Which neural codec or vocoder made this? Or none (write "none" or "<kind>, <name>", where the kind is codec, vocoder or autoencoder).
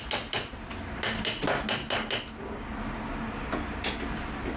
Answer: none